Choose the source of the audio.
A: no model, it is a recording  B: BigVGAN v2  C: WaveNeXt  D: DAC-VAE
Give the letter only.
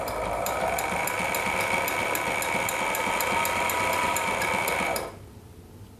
A